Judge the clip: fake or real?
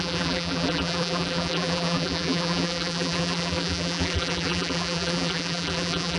fake